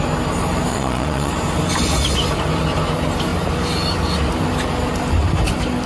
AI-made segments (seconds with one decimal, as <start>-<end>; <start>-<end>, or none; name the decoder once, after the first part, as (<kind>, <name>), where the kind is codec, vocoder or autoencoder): 0.7-1.3 (vocoder, Vocos)